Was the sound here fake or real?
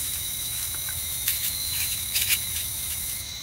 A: fake